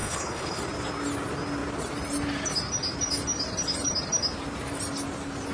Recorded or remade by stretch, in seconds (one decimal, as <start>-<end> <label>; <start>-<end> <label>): 0.0-0.6 remade; 0.6-5.5 recorded